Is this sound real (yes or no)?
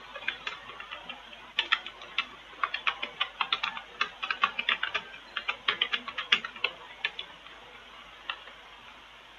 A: yes